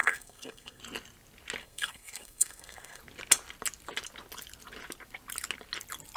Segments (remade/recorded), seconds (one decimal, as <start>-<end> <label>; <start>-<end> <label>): 0.0-0.8 remade; 0.8-1.6 recorded; 1.6-3.0 remade; 3.0-6.2 recorded